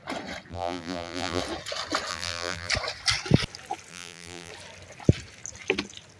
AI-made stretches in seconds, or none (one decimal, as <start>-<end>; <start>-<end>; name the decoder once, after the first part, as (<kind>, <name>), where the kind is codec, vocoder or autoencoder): 0.5-1.4 (vocoder, BigVGAN v2); 2.1-2.7; 3.9-4.5